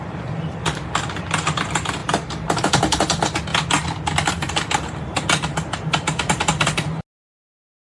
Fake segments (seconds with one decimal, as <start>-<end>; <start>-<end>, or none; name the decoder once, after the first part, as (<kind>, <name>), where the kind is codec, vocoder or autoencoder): 0.0-2.0 (vocoder, BigVGAN v2); 2.6-3.5; 4.3-5.9; 7.3-7.9